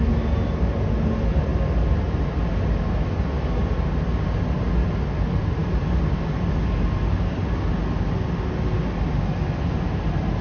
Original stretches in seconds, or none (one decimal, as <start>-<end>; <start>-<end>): 0.0-10.4